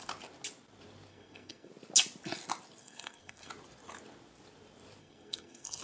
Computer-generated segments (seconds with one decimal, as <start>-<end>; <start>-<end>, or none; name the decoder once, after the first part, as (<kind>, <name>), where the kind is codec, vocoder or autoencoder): 1.1-1.7 (codec, SNAC); 2.8-3.5; 5.0-5.8